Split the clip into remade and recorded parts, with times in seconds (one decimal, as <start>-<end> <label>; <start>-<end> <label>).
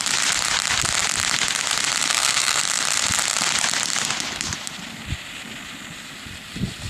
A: 0.0-2.1 recorded; 2.1-2.6 remade; 2.6-6.9 recorded